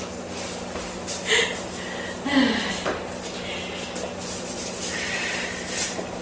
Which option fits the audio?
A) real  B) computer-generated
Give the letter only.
A